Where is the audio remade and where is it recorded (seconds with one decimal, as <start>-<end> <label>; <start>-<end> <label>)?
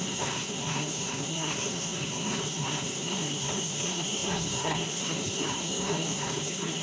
0.0-6.8 remade